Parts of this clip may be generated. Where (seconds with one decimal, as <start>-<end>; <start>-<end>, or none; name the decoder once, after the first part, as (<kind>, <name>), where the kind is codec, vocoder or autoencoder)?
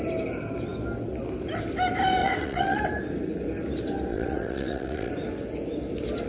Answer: 2.2-2.8 (vocoder, WaveNeXt); 4.1-5.1